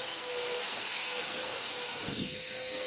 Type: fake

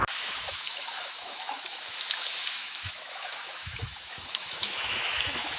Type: fake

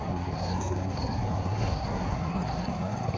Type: fake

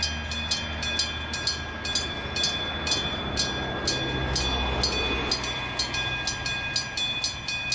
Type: real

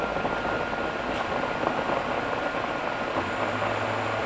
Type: real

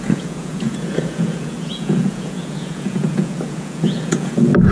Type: fake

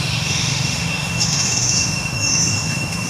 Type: fake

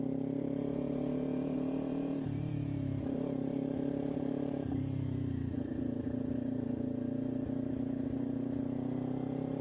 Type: fake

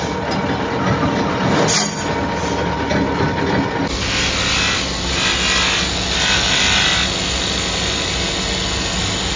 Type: real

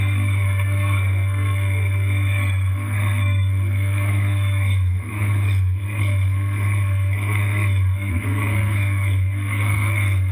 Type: fake